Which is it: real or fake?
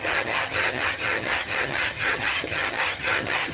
fake